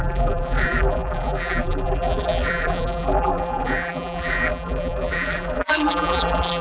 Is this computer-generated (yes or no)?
yes